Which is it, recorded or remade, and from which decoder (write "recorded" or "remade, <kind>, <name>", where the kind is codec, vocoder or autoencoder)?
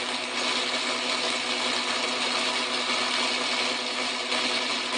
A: recorded